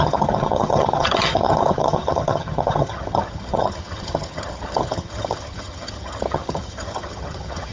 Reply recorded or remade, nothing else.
remade